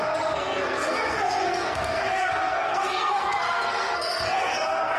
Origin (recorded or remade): remade